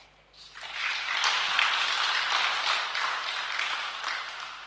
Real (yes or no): yes